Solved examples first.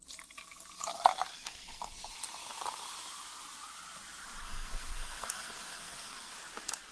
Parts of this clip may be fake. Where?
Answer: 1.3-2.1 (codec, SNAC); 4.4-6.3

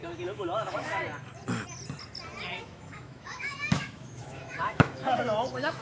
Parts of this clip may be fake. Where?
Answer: 0.0-1.0 (autoencoder, DAC-VAE); 2.6-5.8